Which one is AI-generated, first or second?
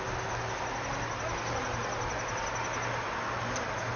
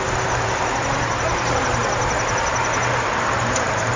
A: second